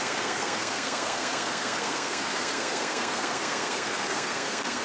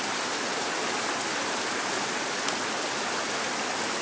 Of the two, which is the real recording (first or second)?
second